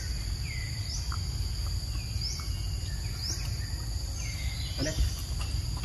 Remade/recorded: recorded